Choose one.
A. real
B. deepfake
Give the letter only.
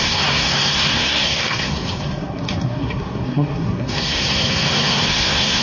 B